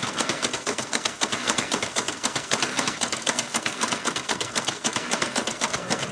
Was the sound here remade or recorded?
remade